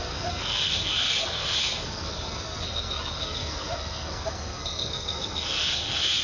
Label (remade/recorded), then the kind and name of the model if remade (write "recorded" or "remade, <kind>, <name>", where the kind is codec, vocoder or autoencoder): remade, codec, SNAC